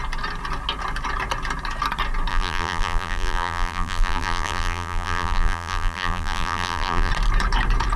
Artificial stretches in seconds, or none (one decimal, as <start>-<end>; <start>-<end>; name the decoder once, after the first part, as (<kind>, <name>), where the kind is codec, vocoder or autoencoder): 2.3-7.1 (vocoder, BigVGAN v2)